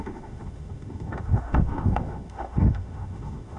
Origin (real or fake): fake